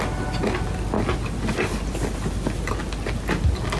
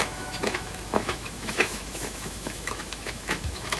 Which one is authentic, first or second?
first